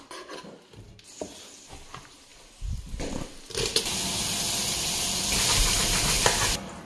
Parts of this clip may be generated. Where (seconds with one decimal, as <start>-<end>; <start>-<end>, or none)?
none